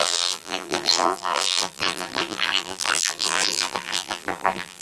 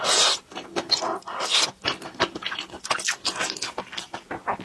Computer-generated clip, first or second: first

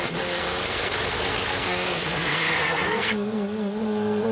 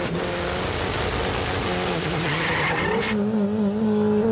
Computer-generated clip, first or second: first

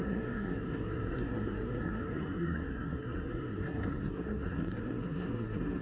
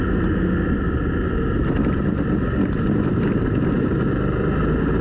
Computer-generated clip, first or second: first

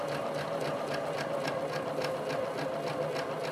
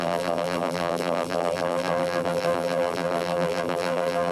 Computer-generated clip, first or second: second